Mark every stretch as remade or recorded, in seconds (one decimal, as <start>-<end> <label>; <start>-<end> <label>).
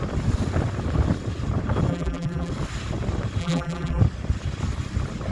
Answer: 0.0-1.9 recorded; 1.9-2.5 remade; 2.5-3.4 recorded; 3.4-4.0 remade; 4.0-5.3 recorded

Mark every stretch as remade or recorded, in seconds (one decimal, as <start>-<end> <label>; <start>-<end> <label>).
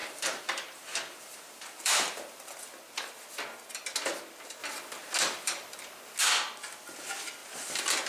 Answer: 0.0-2.5 remade; 2.5-7.4 recorded; 7.4-8.1 remade